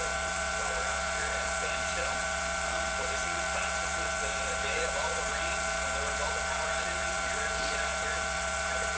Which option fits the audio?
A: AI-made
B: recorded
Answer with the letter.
A